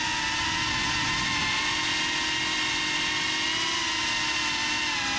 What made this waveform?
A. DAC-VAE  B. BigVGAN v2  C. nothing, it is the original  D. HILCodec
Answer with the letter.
C